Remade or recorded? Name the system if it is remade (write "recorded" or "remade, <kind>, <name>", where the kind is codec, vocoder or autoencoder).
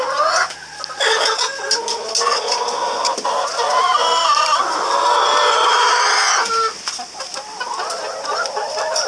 recorded